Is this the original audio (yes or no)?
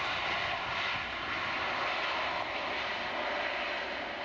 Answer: yes